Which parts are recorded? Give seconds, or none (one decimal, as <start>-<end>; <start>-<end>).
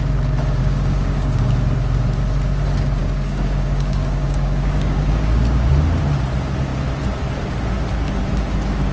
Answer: 0.0-0.6; 1.5-3.0; 5.7-8.9